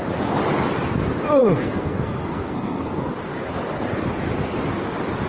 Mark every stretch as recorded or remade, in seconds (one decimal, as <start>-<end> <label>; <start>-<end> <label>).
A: 0.0-1.4 recorded; 1.4-3.1 remade; 3.1-5.3 recorded